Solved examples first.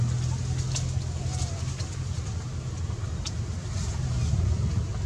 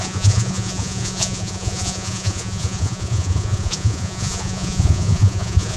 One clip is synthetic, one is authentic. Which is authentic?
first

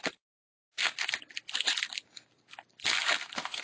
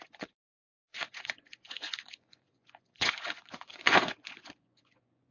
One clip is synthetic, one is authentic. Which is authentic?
first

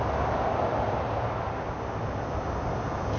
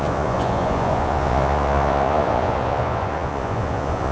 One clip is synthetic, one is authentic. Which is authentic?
first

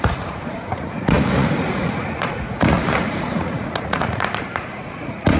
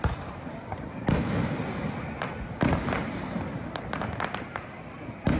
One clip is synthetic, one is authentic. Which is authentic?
second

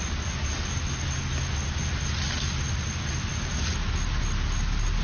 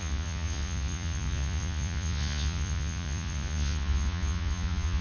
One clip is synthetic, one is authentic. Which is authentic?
first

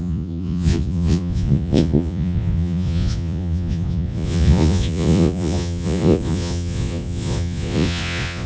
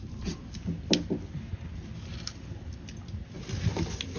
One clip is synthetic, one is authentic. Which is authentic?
second